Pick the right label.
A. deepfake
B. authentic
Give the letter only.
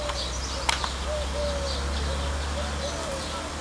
B